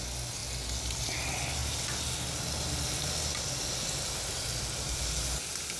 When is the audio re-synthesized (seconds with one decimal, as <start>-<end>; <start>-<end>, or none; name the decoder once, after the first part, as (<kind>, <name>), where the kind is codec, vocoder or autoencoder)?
none